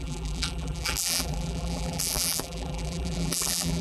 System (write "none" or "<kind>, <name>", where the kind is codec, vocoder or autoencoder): vocoder, BigVGAN v2